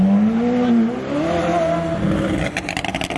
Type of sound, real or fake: real